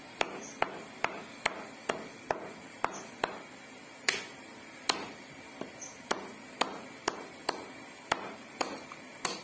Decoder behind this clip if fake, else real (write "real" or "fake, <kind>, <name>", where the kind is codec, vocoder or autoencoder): real